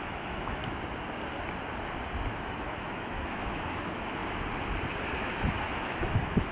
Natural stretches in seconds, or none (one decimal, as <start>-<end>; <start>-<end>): 0.6-2.3; 4.2-5.2